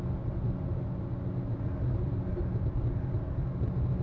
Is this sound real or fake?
real